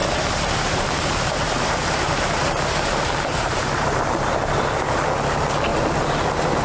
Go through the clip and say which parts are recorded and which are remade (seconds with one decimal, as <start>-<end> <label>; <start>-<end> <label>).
0.0-4.0 remade; 4.0-5.7 recorded; 5.7-6.6 remade